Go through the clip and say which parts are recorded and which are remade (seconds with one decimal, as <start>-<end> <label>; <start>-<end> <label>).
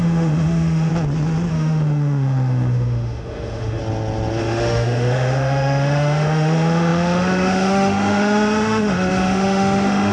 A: 0.0-0.9 remade; 0.9-1.5 recorded; 1.5-3.8 remade; 3.8-4.4 recorded; 4.4-10.1 remade